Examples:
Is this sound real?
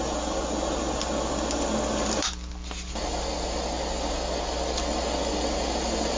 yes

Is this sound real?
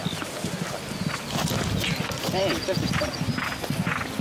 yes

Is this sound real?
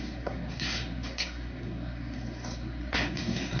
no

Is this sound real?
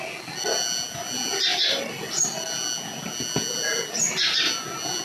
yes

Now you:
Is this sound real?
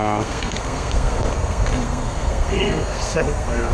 no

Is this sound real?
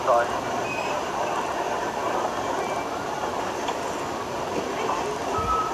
yes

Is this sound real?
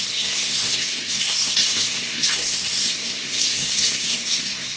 no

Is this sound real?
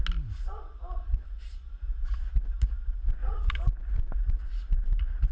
yes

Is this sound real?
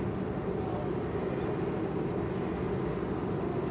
yes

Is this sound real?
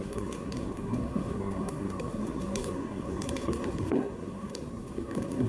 no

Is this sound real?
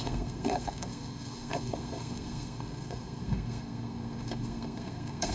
no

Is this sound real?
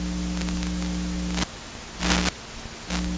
yes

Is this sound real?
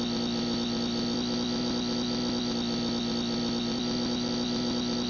yes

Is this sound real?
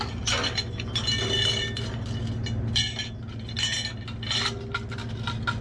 yes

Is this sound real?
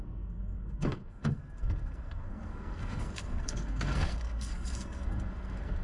no